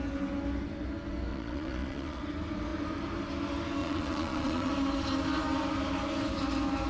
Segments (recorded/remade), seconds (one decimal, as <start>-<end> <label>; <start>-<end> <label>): 0.0-1.3 recorded; 1.3-2.2 remade; 2.2-3.8 recorded; 3.8-4.7 remade; 4.7-6.9 recorded